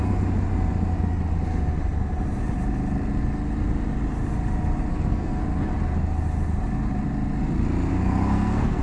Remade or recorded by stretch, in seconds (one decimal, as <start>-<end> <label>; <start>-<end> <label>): 0.0-4.9 recorded; 4.9-5.4 remade; 5.4-7.9 recorded; 7.9-8.8 remade